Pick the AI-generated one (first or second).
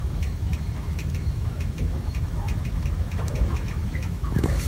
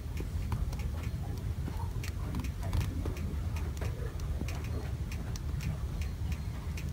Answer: first